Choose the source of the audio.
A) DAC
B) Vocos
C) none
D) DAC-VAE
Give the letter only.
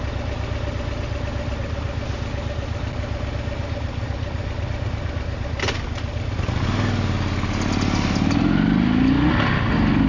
C